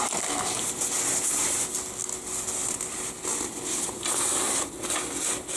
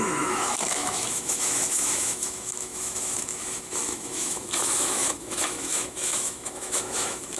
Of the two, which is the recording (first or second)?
first